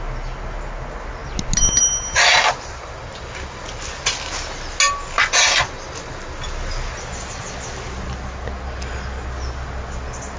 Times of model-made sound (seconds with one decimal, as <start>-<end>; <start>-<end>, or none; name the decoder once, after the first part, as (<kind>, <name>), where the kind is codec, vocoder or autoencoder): none